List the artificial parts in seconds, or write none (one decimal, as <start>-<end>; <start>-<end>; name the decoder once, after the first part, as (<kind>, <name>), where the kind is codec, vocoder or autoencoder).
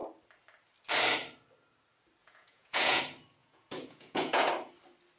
2.2-3.0 (vocoder, Vocos); 3.4-4.5